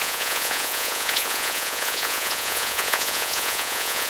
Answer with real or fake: fake